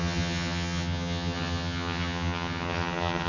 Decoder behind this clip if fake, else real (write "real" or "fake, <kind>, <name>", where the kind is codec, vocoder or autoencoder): fake, vocoder, HiFi-GAN